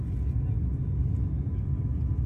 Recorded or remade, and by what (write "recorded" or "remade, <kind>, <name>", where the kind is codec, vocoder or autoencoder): recorded